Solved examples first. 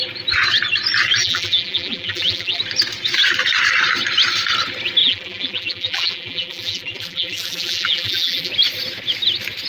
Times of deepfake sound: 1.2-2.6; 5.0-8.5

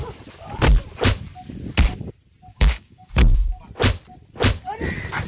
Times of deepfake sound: 2.5-3.1

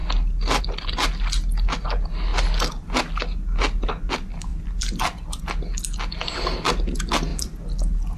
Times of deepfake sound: 4.5-5.4

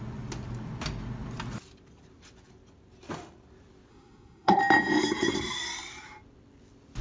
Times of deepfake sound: 3.9-4.6